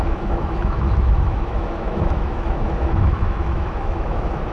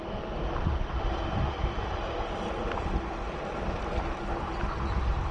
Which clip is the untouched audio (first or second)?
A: second